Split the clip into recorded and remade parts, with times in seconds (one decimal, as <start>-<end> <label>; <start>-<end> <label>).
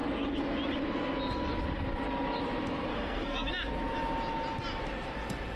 0.0-2.9 recorded; 2.9-3.5 remade; 3.5-5.6 recorded